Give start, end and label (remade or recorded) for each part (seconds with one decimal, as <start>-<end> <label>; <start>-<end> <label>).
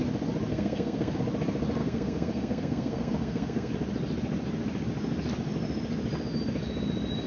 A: 0.0-0.5 recorded; 0.5-1.2 remade; 1.2-1.8 recorded; 1.8-3.7 remade; 3.7-7.3 recorded